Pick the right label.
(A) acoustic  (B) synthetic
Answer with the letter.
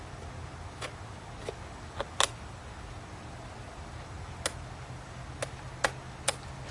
A